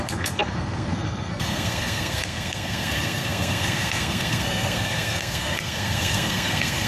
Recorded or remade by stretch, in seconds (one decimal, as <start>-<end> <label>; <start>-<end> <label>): 0.0-6.9 remade